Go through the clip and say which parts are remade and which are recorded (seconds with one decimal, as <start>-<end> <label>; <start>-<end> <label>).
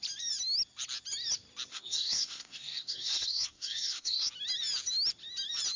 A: 0.0-1.7 recorded; 1.7-4.3 remade; 4.3-5.8 recorded